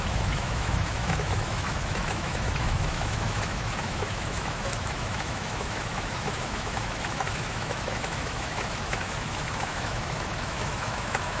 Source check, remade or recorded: remade